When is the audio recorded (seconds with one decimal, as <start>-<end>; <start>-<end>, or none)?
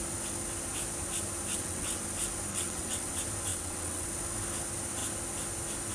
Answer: 0.0-1.5; 2.0-2.5; 3.1-3.5; 4.1-5.9